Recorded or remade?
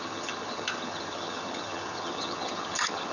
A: remade